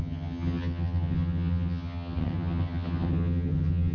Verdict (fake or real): fake